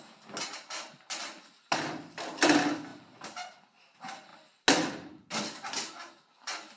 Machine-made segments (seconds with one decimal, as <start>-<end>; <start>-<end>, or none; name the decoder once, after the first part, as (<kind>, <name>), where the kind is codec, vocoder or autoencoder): none